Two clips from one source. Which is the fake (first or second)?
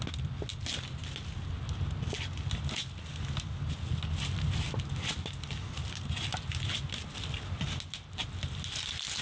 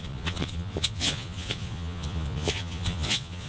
second